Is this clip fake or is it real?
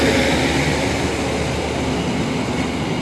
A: real